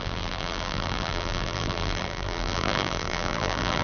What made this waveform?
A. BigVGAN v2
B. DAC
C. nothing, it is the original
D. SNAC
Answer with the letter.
A